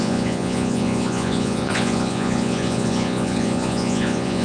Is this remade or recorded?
remade